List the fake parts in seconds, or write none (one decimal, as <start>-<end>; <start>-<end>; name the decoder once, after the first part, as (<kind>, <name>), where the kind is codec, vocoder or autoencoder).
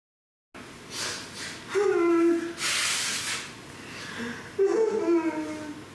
none